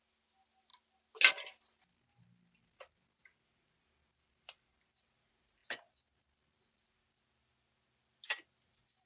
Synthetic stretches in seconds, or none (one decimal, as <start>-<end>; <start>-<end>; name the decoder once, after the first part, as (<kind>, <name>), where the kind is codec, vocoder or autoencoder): none